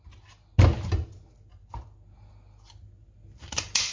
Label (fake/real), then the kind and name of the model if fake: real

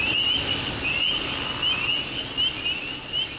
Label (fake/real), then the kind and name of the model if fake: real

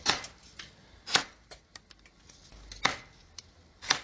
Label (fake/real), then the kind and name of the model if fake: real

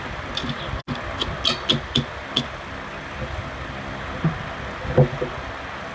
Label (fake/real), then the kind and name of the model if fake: real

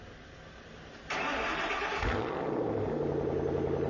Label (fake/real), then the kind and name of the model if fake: real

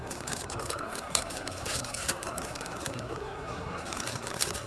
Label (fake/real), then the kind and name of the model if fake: fake, codec, SNAC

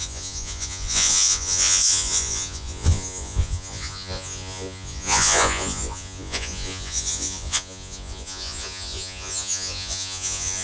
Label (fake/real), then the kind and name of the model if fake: fake, vocoder, Vocos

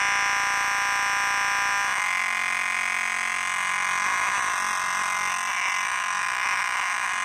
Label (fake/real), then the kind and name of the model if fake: real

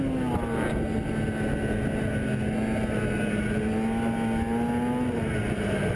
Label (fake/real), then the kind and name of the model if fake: real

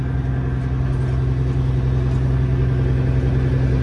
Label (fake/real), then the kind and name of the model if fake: real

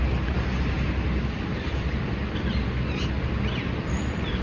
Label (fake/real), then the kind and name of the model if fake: real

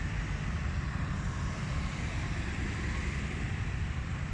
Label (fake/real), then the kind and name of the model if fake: fake, vocoder, BigVGAN v2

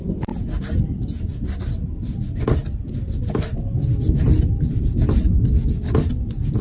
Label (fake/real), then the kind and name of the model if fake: real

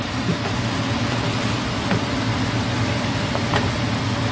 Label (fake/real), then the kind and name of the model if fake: real